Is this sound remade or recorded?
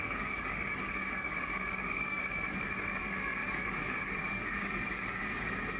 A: remade